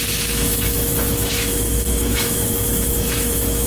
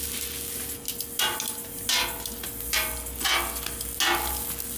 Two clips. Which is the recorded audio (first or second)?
second